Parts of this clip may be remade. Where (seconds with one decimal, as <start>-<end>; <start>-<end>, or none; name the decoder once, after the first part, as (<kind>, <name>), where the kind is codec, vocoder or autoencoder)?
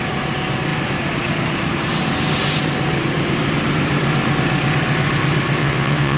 5.6-6.2 (vocoder, WaveNeXt)